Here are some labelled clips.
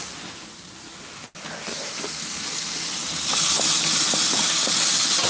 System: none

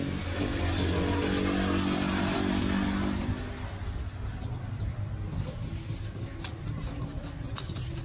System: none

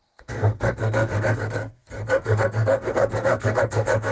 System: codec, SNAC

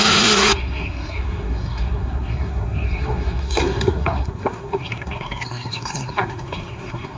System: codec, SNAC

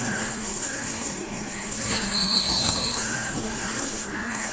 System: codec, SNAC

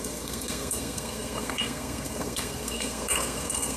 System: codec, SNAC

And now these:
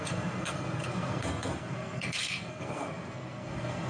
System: codec, SNAC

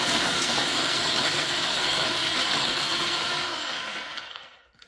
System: codec, SNAC